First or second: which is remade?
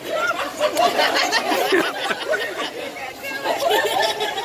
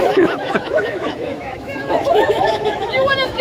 second